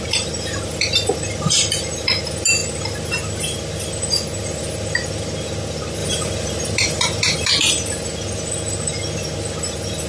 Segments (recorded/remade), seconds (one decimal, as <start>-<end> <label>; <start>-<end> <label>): 0.0-6.0 recorded; 6.0-7.5 remade; 7.5-10.1 recorded